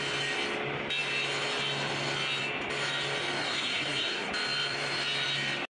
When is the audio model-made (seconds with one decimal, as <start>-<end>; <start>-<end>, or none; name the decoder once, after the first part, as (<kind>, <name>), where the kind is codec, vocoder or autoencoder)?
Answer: 3.4-4.3 (codec, SNAC)